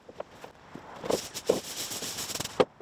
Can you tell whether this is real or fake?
fake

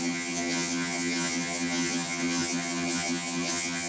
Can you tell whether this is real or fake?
fake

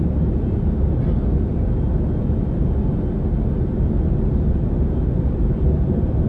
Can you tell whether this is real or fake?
real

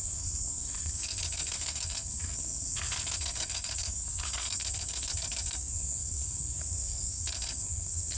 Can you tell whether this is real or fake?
fake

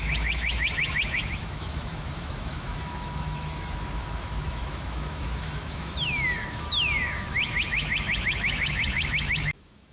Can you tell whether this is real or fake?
fake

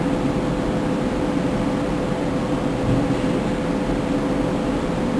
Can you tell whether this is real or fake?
real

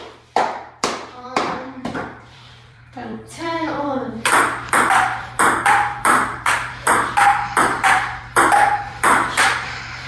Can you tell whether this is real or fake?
fake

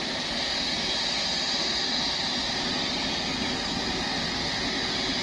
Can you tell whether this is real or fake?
real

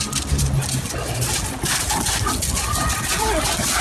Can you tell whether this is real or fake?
real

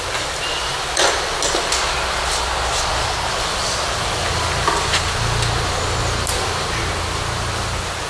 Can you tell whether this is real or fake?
real